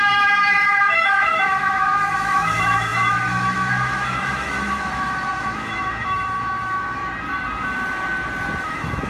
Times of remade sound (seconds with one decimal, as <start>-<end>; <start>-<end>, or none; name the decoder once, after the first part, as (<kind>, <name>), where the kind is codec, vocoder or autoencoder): 0.0-7.0 (autoencoder, DAC-VAE); 8.6-9.1